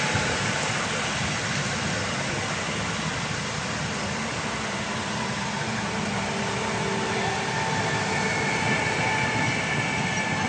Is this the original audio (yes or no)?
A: yes